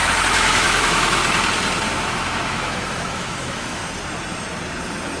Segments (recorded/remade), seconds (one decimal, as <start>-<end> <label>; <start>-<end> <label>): 0.0-1.2 remade; 1.2-2.0 recorded; 2.0-3.8 remade; 3.8-5.2 recorded